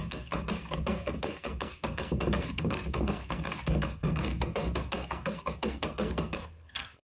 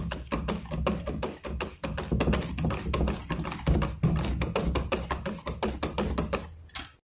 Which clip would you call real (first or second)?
second